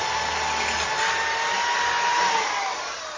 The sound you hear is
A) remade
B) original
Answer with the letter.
B